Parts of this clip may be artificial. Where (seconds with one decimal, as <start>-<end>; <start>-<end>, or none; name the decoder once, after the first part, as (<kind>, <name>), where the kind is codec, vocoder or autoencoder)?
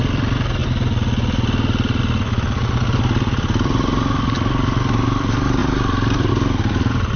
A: 0.0-0.6 (vocoder, BigVGAN v2); 2.0-7.2